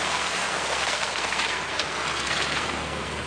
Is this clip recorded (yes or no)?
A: no